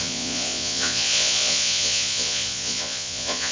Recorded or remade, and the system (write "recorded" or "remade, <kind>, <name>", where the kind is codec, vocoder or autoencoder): remade, vocoder, Vocos